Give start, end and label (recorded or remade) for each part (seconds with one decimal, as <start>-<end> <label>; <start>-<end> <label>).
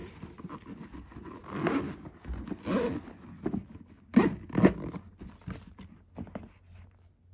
0.0-0.7 remade; 0.7-7.3 recorded